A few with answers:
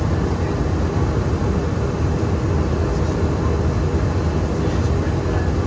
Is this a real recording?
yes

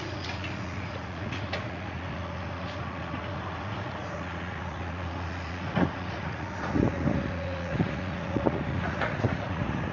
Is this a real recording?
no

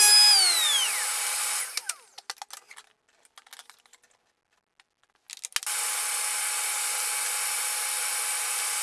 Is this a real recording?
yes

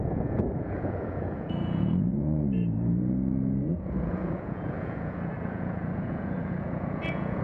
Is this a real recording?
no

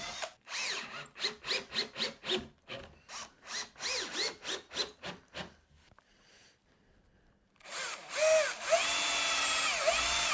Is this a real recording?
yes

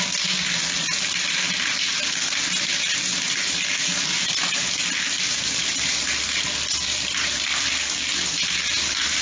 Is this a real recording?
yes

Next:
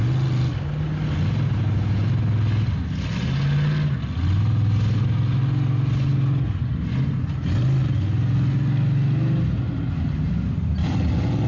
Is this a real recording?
yes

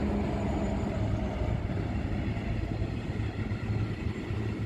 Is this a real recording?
yes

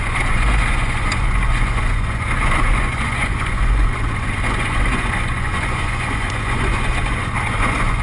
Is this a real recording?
no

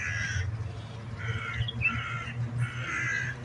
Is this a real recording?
yes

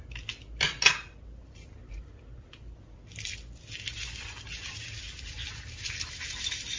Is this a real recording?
yes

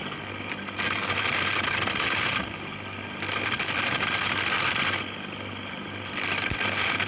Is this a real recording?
yes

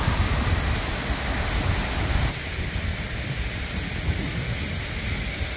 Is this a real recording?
yes